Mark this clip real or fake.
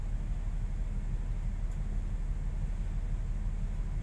real